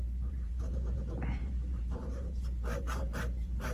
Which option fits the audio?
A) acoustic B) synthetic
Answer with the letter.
B